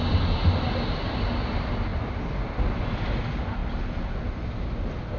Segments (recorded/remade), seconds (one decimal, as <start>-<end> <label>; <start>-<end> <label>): 0.0-5.2 recorded

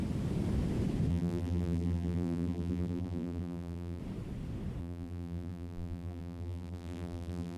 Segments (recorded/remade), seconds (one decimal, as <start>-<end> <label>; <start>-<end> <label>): 0.0-1.1 recorded; 1.1-4.0 remade; 4.0-4.8 recorded; 4.8-7.6 remade

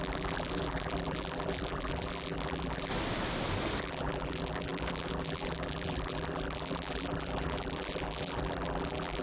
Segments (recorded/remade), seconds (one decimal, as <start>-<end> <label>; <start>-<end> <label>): 0.0-2.9 remade; 2.9-3.8 recorded; 3.8-9.2 remade

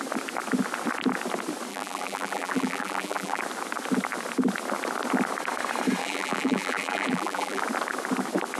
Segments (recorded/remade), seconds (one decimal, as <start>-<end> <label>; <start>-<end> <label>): 0.0-1.7 recorded; 1.7-3.4 remade; 3.4-6.0 recorded; 6.0-7.6 remade; 7.6-8.6 recorded

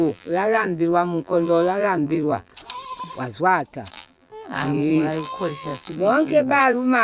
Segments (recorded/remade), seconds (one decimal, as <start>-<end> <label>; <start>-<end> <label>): 0.0-2.5 remade; 2.5-3.9 recorded; 3.9-7.0 remade

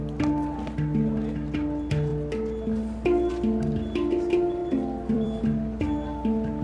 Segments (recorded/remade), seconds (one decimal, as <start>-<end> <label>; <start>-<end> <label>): 0.0-4.6 recorded; 4.6-5.4 remade; 5.4-6.6 recorded

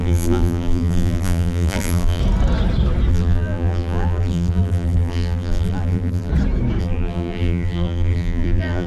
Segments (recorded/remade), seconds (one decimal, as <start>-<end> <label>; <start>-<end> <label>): 0.0-2.2 remade; 2.2-3.1 recorded; 3.1-6.3 remade; 6.3-6.8 recorded; 6.8-8.9 remade

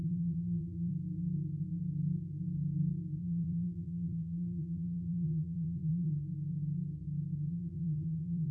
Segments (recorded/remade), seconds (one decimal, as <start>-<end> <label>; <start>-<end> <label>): 0.0-0.9 remade; 0.9-3.2 recorded; 3.2-6.1 remade; 6.1-7.5 recorded; 7.5-8.5 remade